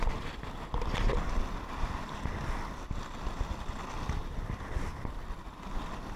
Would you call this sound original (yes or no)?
yes